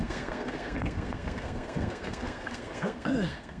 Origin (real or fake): fake